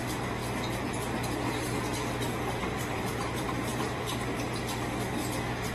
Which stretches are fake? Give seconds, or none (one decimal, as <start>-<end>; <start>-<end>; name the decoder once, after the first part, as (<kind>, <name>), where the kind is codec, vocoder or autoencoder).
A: 2.6-4.6 (vocoder, BigVGAN v2)